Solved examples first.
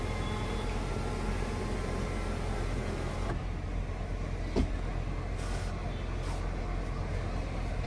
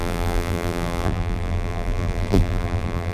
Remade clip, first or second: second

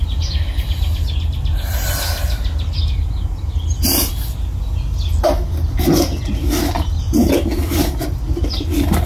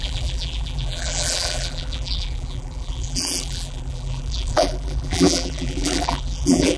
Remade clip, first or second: second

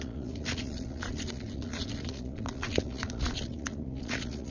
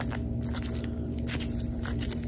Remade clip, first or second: first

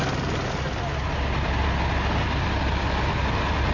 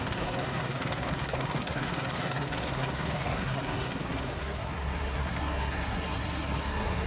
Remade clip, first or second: second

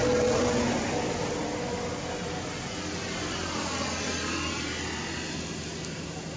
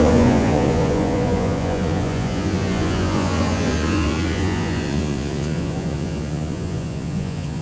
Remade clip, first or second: second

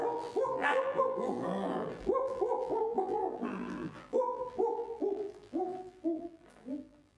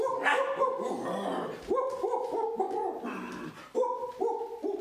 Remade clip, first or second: first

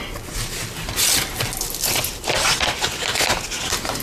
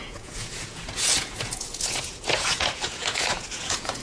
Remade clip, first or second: second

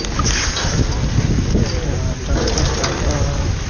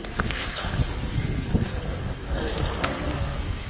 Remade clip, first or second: second